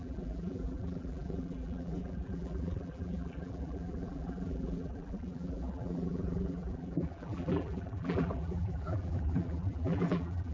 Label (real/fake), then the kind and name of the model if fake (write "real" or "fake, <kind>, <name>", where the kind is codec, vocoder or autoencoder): fake, vocoder, BigVGAN v2